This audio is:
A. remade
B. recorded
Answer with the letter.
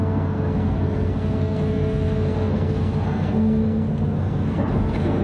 A